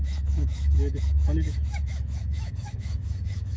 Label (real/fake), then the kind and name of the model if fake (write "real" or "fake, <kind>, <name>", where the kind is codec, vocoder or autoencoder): fake, autoencoder, DAC-VAE